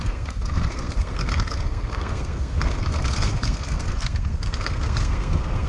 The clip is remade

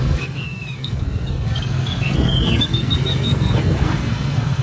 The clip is remade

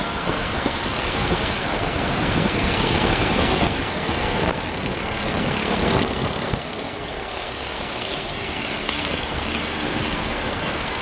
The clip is remade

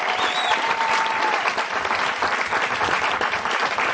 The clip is recorded